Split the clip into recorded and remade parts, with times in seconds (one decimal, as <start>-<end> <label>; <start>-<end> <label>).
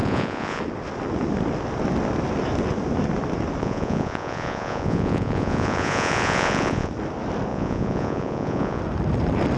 0.0-0.6 remade; 0.6-3.6 recorded; 3.6-6.9 remade; 6.9-7.5 recorded; 7.5-8.8 remade; 8.8-9.6 recorded